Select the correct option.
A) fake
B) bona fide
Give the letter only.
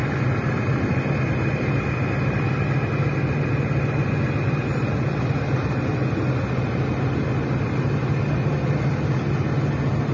B